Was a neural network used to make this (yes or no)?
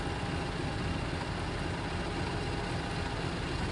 no